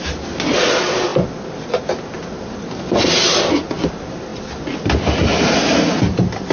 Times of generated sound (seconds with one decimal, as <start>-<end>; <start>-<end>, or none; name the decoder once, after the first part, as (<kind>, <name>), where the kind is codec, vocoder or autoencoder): none